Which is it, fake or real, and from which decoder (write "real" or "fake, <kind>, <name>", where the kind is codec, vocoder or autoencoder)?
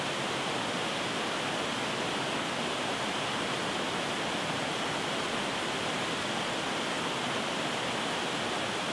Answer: real